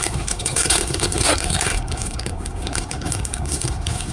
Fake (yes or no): yes